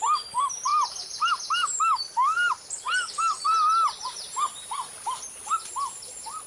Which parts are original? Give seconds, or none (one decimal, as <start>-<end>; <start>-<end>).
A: 0.0-6.5